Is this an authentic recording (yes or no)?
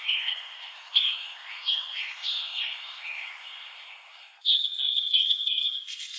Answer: no